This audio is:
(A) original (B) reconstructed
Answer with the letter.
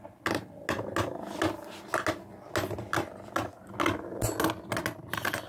A